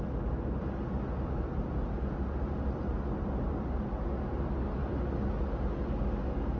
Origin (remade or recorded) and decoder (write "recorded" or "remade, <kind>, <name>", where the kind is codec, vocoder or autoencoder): recorded